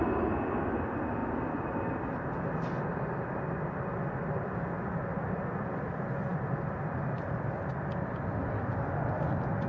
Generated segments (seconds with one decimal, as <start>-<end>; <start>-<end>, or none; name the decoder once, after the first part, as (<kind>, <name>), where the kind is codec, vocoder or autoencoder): none